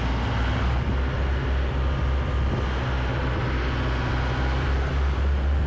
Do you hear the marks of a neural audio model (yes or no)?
no